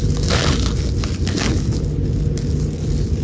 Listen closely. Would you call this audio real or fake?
real